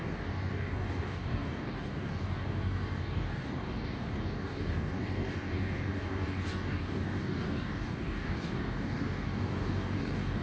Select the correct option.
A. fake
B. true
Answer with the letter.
A